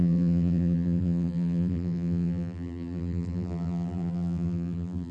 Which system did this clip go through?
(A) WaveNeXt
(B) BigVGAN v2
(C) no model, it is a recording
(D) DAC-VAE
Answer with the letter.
B